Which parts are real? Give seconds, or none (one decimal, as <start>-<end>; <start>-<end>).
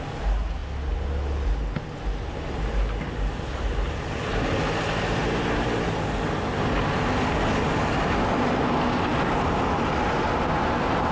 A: 0.0-11.1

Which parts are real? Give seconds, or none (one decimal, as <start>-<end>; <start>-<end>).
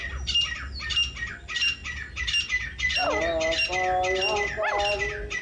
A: 0.0-5.4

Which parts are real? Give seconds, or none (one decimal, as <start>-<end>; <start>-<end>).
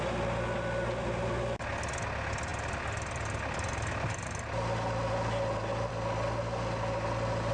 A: 0.0-7.5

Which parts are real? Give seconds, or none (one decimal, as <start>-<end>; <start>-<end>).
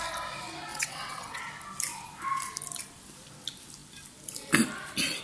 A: 0.0-0.7; 1.4-5.2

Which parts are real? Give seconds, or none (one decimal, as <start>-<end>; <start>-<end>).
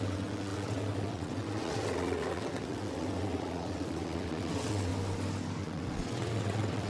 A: 4.9-5.6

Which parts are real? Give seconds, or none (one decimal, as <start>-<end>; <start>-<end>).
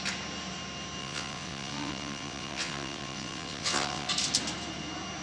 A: 0.0-1.0; 4.1-5.2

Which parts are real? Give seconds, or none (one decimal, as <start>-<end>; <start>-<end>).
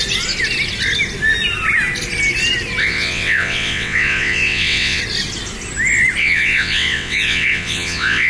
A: 0.0-2.8; 5.0-6.2